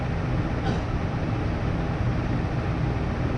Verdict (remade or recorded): recorded